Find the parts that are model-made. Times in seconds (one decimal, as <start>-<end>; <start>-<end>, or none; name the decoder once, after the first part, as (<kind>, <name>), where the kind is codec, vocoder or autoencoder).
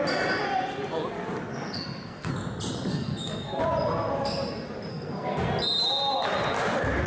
1.5-2.3 (codec, SNAC); 2.9-3.6; 4.9-5.5